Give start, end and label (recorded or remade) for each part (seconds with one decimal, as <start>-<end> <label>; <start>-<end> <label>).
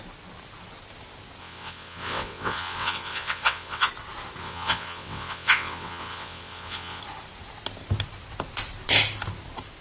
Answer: 0.0-1.4 recorded; 1.4-3.9 remade; 3.9-4.4 recorded; 4.4-7.0 remade; 7.0-9.8 recorded